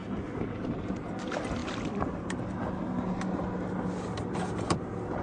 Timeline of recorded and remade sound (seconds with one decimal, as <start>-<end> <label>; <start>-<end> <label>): 0.0-5.2 recorded